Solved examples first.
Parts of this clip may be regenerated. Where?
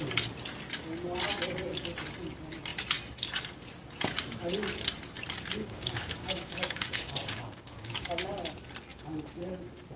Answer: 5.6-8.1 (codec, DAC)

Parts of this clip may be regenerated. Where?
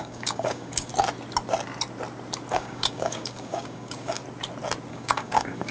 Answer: 0.0-0.9 (codec, DAC); 2.5-4.2; 4.9-5.7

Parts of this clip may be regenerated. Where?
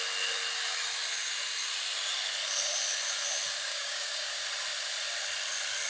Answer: 3.7-4.4 (codec, DAC)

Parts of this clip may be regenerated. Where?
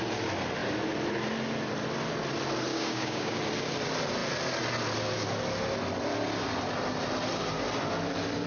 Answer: 2.7-3.4 (codec, DAC)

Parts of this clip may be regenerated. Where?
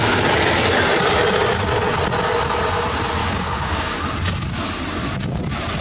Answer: 3.2-4.0 (codec, DAC)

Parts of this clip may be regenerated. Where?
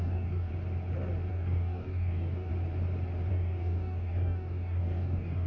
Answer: 0.0-0.5 (codec, DAC); 1.3-2.5; 3.3-5.5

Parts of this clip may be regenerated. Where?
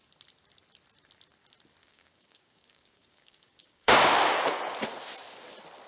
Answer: 1.8-4.6 (codec, DAC)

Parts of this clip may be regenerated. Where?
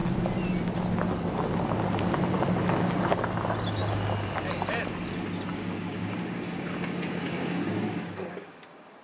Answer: 5.5-9.0 (codec, DAC)